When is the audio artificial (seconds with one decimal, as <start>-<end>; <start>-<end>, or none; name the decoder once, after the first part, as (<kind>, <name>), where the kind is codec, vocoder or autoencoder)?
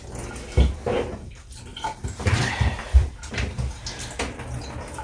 1.7-3.3 (vocoder, BigVGAN v2)